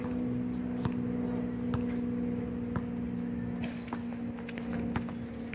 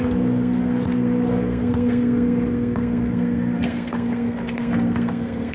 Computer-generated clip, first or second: second